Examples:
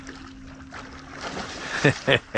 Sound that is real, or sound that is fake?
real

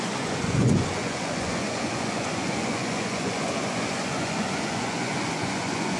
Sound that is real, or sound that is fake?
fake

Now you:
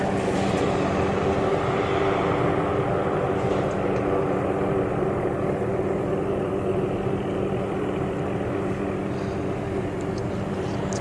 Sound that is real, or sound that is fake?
real